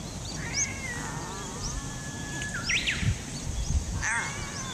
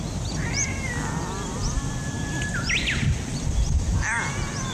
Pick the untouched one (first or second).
first